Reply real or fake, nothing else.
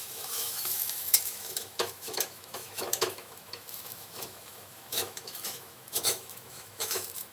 fake